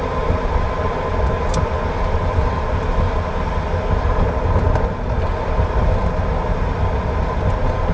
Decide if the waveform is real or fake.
real